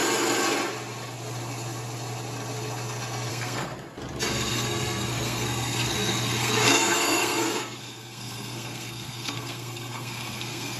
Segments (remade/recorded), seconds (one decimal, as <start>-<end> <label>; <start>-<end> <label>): 0.0-3.3 recorded; 3.3-3.7 remade; 3.7-4.3 recorded; 4.3-10.8 remade